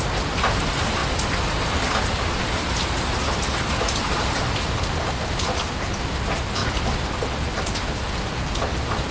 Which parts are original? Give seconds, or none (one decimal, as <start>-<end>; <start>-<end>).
0.0-9.1

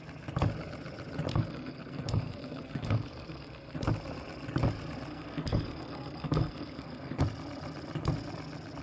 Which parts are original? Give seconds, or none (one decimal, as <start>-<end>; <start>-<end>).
0.0-1.3; 3.8-5.1; 7.2-8.8

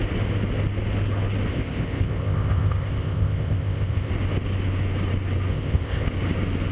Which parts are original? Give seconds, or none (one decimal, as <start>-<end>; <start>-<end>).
0.0-1.5; 4.1-5.5; 6.1-6.7

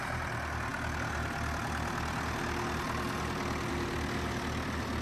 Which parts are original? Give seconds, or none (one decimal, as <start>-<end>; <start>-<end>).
0.0-5.0

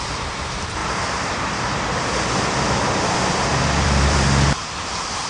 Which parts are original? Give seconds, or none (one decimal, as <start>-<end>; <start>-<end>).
0.8-3.1; 4.6-5.3

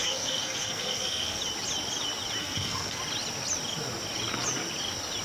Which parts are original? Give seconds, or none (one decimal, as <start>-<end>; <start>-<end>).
1.4-2.4; 3.0-5.2

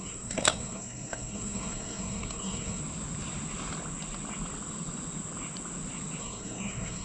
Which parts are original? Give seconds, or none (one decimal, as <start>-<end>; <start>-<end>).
2.8-6.2